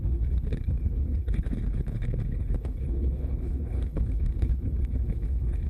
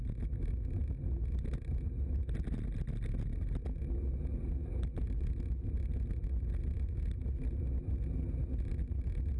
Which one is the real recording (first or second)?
second